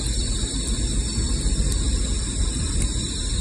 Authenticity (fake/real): real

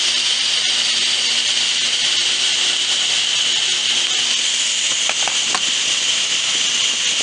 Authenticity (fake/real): real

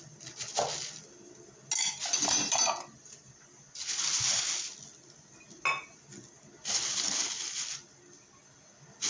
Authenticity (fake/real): real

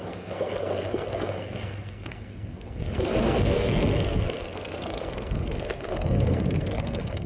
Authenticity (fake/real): fake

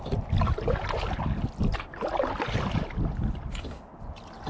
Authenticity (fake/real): real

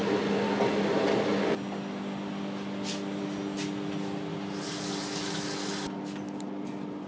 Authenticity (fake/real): real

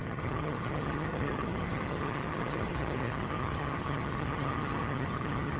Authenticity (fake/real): fake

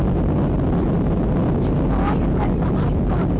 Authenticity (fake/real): real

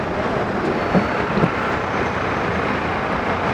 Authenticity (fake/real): real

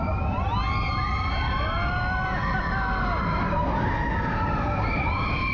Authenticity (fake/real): real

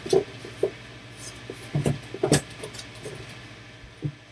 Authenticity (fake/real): real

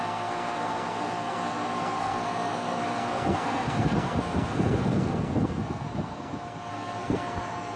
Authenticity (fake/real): fake